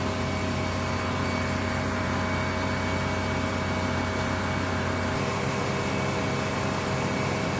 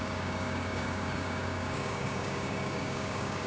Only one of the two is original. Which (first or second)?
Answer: first